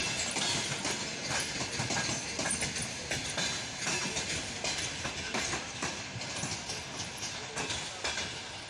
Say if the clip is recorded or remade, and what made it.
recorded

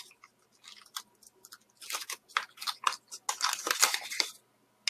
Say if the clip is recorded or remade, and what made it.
recorded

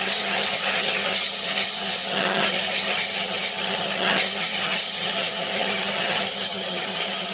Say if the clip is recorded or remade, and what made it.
remade, vocoder, HiFi-GAN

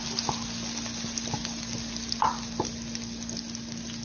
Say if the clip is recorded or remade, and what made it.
recorded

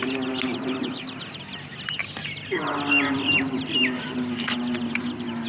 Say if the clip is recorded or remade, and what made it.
recorded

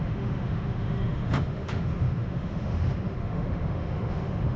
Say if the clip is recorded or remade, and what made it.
remade, autoencoder, DAC-VAE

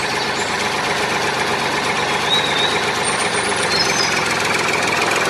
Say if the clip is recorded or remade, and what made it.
recorded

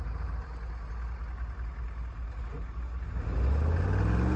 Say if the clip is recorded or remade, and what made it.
recorded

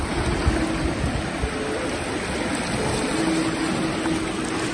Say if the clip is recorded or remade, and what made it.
recorded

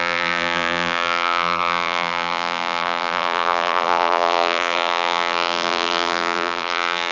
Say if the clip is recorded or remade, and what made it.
remade, vocoder, BigVGAN v2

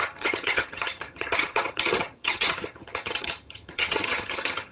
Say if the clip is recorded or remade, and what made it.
remade, vocoder, HiFi-GAN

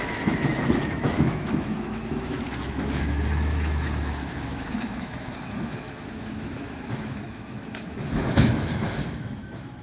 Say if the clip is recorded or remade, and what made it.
remade, autoencoder, DAC-VAE